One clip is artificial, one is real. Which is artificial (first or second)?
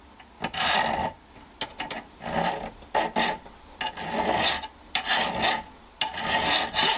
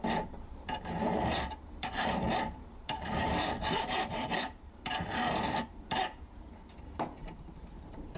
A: second